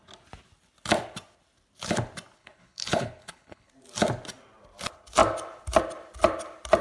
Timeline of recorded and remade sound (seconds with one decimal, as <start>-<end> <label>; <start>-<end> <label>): 0.0-2.4 recorded; 2.4-3.7 remade; 3.7-6.8 recorded